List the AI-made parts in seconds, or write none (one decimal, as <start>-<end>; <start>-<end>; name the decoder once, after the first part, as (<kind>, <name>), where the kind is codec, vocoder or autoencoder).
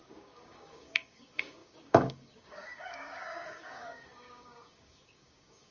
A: 0.0-5.7 (codec, DAC)